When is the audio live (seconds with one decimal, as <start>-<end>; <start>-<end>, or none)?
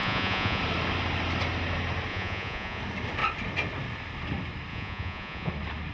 0.6-2.1; 2.8-4.7; 5.5-5.9